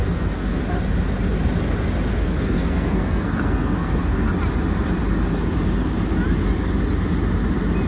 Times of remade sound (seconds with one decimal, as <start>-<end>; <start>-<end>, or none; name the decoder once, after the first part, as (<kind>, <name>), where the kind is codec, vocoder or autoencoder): 0.0-0.6 (codec, SNAC); 2.1-4.3

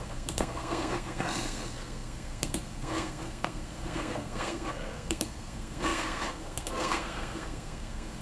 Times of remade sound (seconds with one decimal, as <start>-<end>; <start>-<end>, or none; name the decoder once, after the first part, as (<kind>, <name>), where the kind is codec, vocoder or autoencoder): 0.0-8.2 (codec, SNAC)

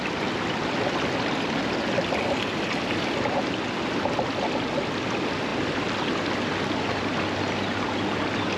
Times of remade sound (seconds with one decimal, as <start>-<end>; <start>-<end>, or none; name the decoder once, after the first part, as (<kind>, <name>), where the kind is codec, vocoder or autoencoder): none